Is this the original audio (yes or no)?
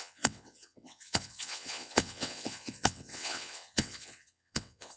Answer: no